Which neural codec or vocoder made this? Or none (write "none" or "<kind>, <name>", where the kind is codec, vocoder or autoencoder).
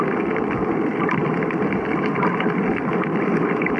vocoder, BigVGAN v2